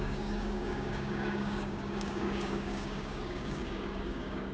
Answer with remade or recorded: remade